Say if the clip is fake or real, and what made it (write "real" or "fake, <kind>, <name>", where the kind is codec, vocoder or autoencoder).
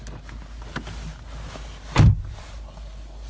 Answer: real